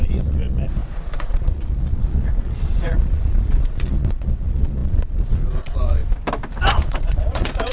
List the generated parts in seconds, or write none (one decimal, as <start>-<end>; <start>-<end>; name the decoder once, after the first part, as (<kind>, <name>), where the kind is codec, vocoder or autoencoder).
0.0-6.0 (vocoder, Vocos); 6.7-7.7